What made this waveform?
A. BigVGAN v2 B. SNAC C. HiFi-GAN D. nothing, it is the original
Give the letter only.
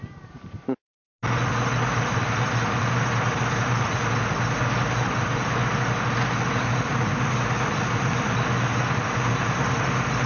D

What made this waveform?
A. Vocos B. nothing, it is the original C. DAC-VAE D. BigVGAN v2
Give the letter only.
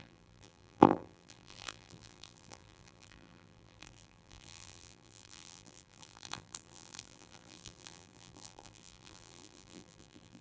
D